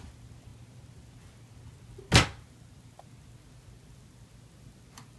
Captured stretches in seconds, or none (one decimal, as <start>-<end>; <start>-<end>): 0.0-5.2